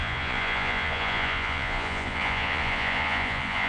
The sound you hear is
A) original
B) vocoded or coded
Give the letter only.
B